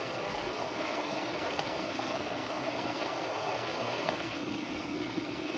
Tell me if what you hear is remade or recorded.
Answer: remade